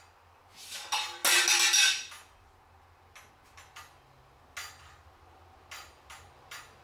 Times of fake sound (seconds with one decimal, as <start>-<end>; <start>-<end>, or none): none

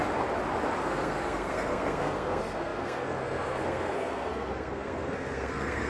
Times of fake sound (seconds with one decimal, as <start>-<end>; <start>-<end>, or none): 0.8-5.9